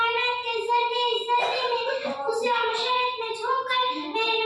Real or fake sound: real